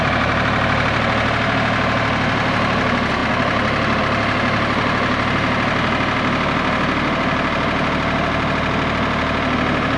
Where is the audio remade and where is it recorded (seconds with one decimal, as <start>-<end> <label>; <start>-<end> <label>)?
0.0-10.0 recorded